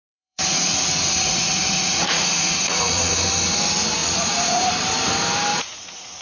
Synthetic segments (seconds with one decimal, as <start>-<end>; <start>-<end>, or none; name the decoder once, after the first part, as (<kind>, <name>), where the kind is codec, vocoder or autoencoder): 0.0-3.1 (vocoder, Vocos); 4.0-4.7; 5.5-6.2